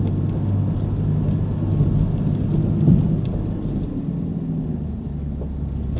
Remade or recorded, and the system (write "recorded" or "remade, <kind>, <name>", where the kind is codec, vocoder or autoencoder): recorded